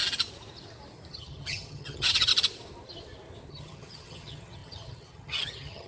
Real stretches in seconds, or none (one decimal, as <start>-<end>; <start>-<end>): 0.0-1.1; 2.3-3.5